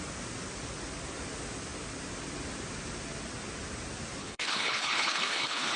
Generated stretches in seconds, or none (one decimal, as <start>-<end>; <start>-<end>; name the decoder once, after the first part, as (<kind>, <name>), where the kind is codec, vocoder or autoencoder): 4.2-5.8 (codec, HILCodec)